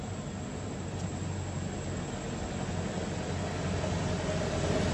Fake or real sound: real